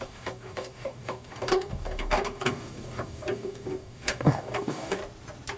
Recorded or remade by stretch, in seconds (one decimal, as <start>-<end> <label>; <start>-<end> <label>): 0.0-5.0 remade; 5.0-5.6 recorded